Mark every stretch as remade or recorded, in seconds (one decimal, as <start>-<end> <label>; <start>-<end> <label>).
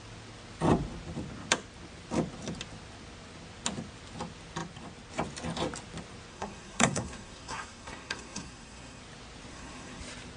0.0-6.3 recorded; 6.3-9.0 remade; 9.0-9.5 recorded; 9.5-10.0 remade; 10.0-10.4 recorded